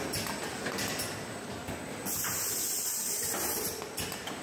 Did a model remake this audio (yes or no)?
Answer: no